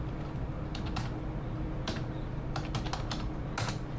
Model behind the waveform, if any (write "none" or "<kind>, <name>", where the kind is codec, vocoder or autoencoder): none